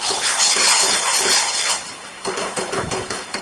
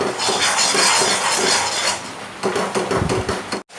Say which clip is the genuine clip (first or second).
second